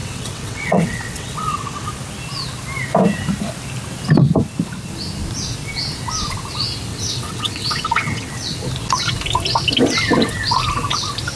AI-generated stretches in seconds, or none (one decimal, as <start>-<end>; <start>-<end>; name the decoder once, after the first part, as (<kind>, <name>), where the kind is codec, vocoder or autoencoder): 0.0-1.9 (vocoder, WaveNeXt); 6.9-8.3